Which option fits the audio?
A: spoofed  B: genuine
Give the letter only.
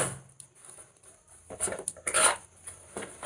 B